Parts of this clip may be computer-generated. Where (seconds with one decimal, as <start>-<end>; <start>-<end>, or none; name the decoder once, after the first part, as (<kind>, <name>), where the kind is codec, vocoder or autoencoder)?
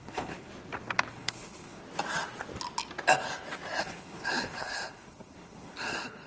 0.0-0.5 (codec, HILCodec); 1.1-1.8; 3.8-6.3